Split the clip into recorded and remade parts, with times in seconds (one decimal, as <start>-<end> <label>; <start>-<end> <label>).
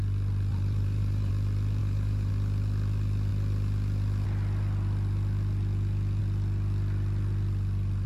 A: 0.0-0.5 recorded; 0.5-1.3 remade; 1.3-1.8 recorded; 1.8-2.3 remade; 2.3-8.1 recorded